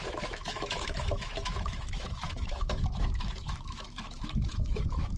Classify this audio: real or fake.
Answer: fake